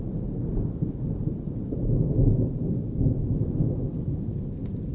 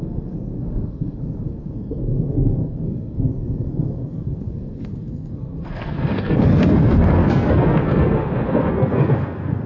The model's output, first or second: second